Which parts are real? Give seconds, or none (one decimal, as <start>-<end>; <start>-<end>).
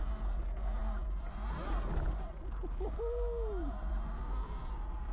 0.0-5.1